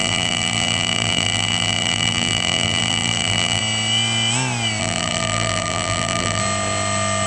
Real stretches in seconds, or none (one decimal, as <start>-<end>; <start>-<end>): 3.6-4.8; 6.4-7.3